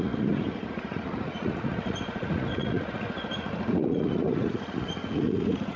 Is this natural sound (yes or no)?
no